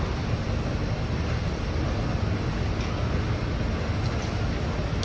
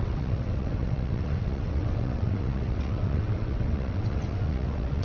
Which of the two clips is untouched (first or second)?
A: first